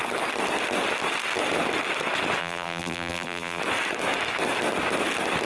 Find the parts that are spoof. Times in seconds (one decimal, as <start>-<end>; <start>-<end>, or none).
2.4-3.6